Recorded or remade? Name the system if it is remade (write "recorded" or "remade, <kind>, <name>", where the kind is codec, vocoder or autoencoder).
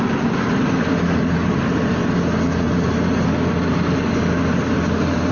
recorded